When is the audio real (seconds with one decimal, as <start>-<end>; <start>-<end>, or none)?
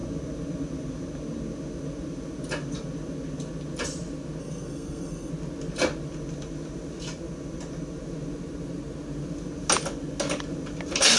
0.0-4.4; 5.3-11.2